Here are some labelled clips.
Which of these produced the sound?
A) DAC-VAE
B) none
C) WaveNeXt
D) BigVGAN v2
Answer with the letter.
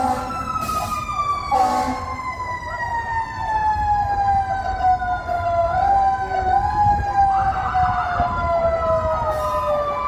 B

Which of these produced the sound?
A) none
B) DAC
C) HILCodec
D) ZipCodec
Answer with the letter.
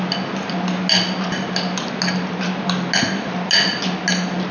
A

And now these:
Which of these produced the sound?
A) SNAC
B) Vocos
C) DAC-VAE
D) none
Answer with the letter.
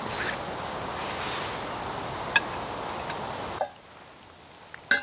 D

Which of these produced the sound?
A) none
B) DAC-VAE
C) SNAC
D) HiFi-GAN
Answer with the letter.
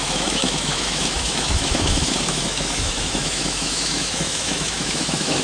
B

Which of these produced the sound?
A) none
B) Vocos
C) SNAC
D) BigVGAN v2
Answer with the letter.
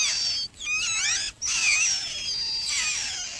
A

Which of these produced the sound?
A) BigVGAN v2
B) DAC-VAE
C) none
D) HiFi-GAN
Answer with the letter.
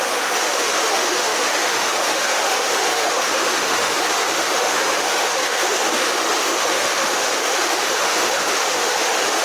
B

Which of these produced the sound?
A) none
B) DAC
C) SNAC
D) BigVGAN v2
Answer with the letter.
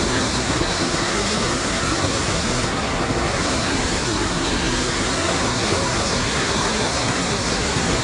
C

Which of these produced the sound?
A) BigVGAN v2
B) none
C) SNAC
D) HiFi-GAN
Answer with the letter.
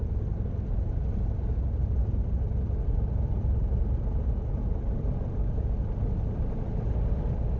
B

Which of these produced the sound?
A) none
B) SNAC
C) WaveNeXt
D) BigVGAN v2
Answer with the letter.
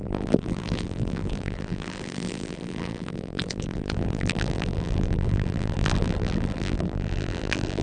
D